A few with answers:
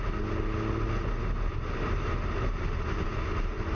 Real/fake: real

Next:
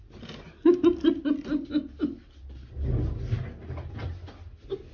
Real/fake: real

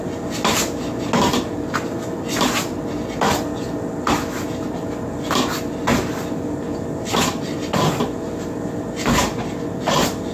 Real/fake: real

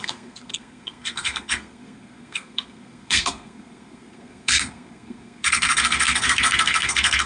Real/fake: fake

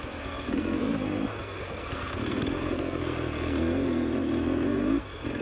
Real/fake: fake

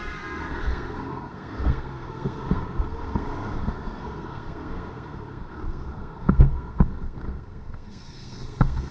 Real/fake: fake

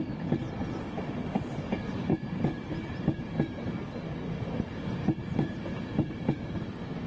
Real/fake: real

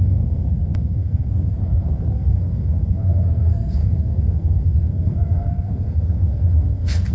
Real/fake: fake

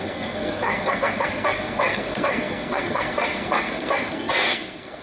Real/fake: fake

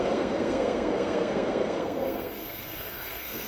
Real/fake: fake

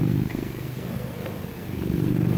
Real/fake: fake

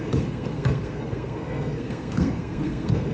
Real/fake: fake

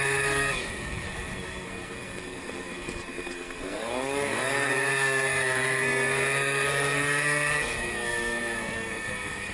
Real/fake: fake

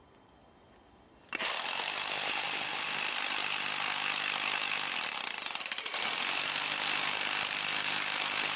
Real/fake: real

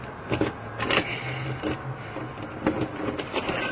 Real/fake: real